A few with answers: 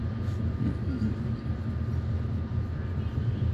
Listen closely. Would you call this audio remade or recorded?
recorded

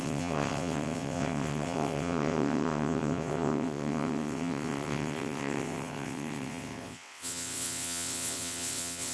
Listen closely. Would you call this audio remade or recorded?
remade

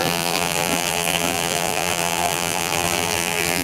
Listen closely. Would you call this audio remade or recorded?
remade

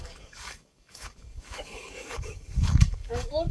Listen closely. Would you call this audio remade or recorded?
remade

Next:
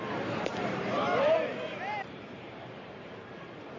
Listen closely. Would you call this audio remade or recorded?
remade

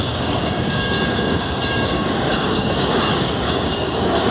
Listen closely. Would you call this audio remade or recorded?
remade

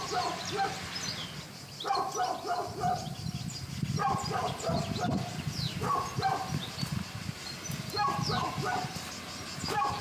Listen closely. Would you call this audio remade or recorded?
recorded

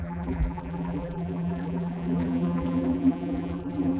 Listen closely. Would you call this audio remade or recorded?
remade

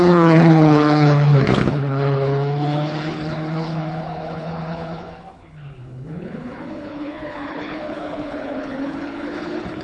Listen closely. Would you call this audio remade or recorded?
remade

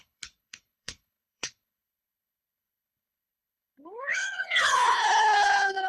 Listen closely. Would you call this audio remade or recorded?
remade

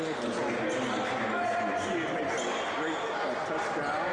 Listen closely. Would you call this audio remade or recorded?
recorded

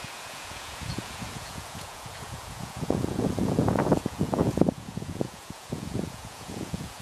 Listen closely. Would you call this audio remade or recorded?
remade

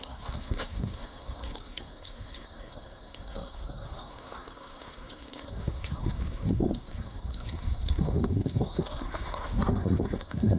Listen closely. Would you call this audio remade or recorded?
remade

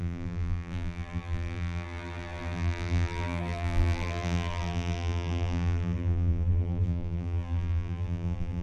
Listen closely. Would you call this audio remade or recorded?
remade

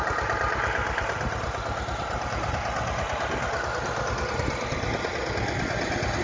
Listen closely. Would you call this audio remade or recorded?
recorded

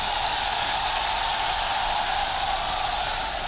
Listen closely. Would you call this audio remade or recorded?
recorded